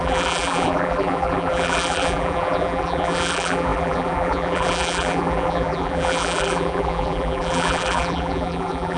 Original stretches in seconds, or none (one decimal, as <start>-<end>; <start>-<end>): none